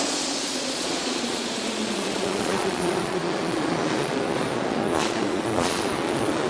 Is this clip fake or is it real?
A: fake